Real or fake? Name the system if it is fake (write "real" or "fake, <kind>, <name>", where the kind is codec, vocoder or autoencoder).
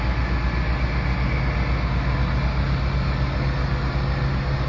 real